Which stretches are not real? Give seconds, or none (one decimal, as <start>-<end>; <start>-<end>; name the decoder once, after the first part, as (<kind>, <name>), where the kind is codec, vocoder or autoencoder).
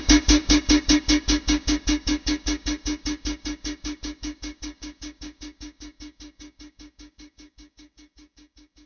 0.0-8.9 (codec, DAC)